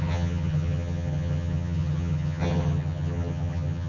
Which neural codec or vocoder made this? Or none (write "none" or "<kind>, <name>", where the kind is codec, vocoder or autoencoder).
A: vocoder, HiFi-GAN